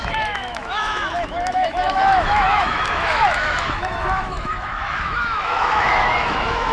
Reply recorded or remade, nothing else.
remade